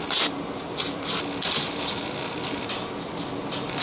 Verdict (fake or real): real